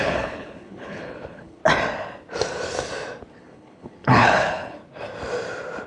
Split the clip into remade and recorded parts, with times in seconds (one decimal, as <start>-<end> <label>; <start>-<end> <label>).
0.0-1.6 remade; 1.6-3.3 recorded; 3.3-4.8 remade; 4.8-5.9 recorded